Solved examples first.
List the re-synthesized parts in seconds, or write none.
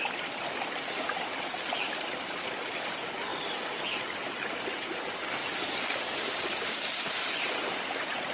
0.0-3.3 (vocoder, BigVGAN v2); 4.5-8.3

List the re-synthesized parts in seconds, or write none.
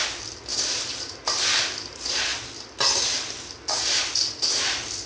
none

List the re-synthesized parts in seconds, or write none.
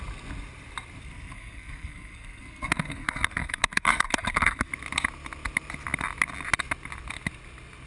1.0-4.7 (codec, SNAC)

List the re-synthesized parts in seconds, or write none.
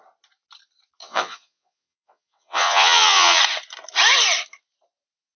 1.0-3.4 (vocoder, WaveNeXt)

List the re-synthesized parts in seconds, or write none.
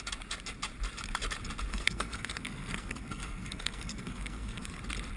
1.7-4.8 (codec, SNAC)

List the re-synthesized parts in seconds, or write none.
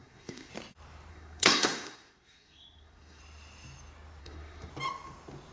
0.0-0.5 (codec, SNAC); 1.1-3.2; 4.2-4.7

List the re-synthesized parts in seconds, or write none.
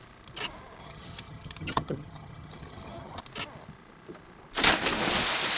0.8-3.2 (vocoder, HiFi-GAN)